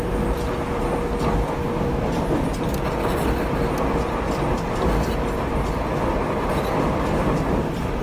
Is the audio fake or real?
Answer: real